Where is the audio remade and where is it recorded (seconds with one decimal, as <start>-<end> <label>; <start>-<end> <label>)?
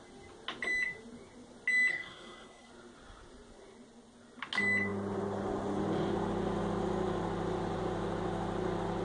0.0-1.9 recorded; 1.9-2.7 remade; 2.7-9.0 recorded